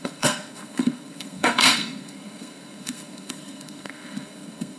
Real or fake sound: fake